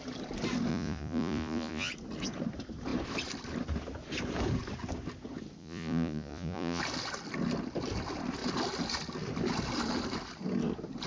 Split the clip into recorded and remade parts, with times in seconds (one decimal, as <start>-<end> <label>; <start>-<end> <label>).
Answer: 0.0-0.7 recorded; 0.7-1.9 remade; 1.9-5.6 recorded; 5.6-6.8 remade; 6.8-11.1 recorded